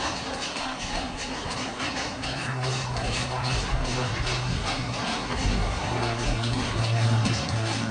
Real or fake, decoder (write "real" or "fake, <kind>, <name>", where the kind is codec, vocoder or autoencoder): fake, codec, SNAC